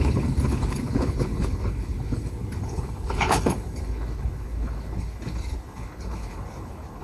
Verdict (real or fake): fake